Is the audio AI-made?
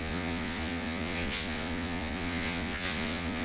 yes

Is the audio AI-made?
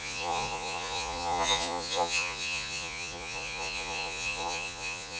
yes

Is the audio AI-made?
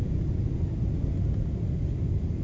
no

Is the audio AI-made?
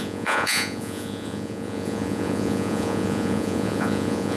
yes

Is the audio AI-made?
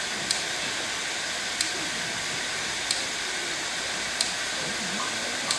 no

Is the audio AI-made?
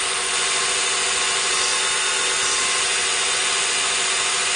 yes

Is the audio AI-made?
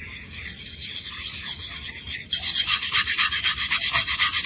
no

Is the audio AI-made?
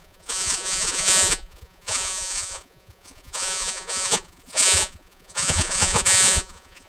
yes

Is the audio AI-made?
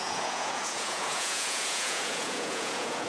yes